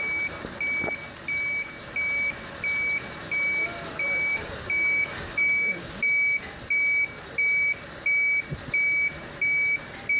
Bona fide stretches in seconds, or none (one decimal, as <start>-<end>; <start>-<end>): 0.0-4.3; 5.9-10.2